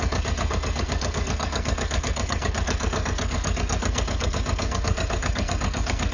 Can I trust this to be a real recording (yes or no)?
no